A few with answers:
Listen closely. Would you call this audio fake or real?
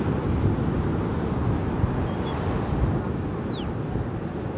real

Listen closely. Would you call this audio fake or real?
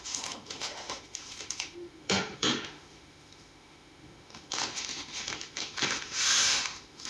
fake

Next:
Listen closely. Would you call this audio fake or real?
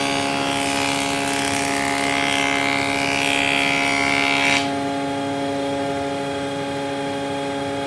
real